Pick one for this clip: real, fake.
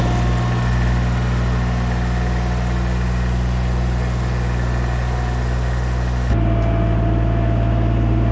real